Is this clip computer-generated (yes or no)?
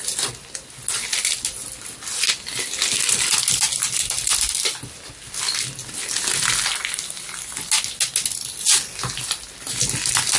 no